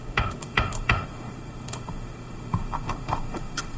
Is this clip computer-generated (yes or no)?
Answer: yes